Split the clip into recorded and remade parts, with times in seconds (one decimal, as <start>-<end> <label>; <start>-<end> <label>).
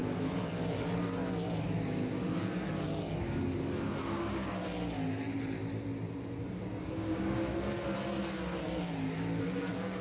0.0-4.0 recorded; 4.0-4.6 remade; 4.6-6.5 recorded; 6.5-7.5 remade; 7.5-9.4 recorded; 9.4-10.0 remade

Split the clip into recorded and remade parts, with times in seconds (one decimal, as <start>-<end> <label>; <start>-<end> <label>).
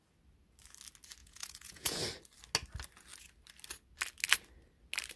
0.0-1.2 recorded; 1.2-2.0 remade; 2.0-5.2 recorded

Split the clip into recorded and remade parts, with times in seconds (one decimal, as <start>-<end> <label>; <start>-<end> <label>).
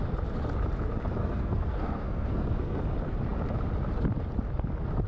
0.0-1.2 recorded; 1.2-2.8 remade; 2.8-5.1 recorded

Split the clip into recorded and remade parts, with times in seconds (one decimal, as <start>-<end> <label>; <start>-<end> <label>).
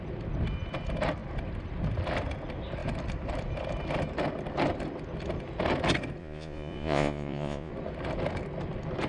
0.0-6.2 recorded; 6.2-7.7 remade; 7.7-9.1 recorded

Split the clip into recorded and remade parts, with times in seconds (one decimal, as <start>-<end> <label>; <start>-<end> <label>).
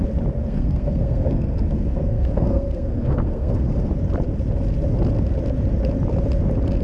0.0-0.5 recorded; 0.5-3.9 remade; 3.9-6.8 recorded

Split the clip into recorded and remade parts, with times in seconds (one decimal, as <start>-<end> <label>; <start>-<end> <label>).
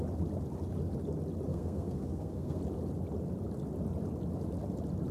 0.0-1.5 recorded; 1.5-2.6 remade; 2.6-5.1 recorded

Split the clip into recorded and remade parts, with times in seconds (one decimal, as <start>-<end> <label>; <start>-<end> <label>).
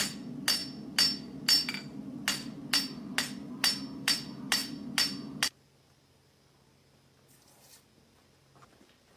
0.0-9.2 recorded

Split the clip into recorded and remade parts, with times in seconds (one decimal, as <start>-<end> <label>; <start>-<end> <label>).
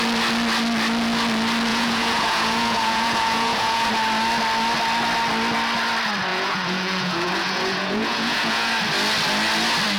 0.0-1.7 recorded; 1.7-3.9 remade; 3.9-6.3 recorded; 6.3-8.7 remade; 8.7-10.0 recorded